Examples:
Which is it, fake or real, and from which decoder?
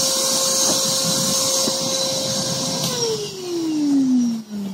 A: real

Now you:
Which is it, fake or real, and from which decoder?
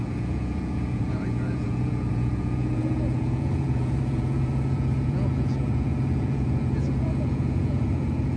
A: fake, vocoder, Vocos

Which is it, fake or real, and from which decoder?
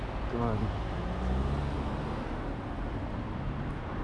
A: real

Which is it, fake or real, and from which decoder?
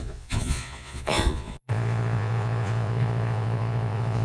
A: fake, vocoder, Vocos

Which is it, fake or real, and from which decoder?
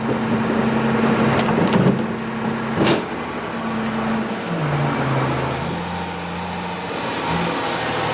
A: real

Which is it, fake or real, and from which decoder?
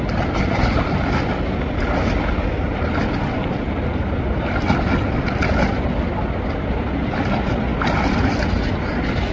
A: real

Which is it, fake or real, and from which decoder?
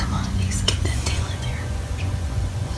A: fake, vocoder, Vocos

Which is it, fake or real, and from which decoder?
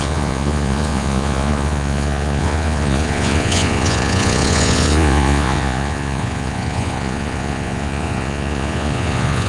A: fake, vocoder, Vocos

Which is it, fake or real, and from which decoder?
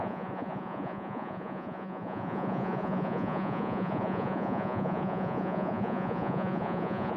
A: fake, vocoder, Vocos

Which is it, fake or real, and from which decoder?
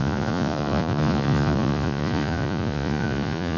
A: fake, vocoder, Vocos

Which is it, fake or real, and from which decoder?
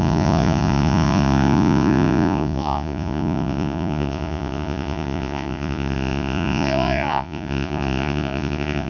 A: fake, vocoder, Vocos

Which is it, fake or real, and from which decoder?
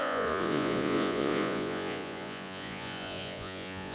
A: fake, vocoder, Vocos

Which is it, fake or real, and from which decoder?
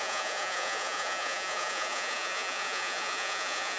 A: fake, vocoder, Vocos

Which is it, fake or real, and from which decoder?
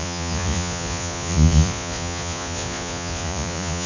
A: fake, vocoder, Vocos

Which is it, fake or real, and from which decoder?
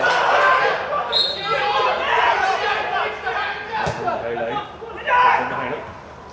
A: real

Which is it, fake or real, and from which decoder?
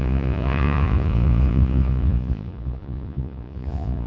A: fake, vocoder, Vocos